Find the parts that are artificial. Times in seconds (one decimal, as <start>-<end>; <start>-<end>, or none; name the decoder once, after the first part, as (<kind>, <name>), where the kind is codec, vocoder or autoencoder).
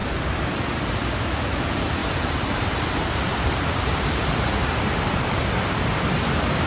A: 2.0-5.5 (vocoder, BigVGAN v2)